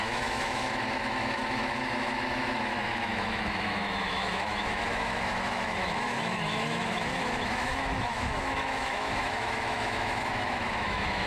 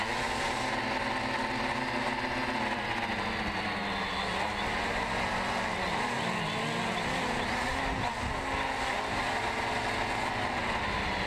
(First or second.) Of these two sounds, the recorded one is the second